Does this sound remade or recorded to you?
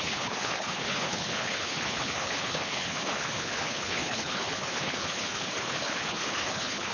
remade